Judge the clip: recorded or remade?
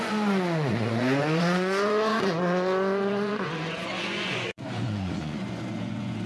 remade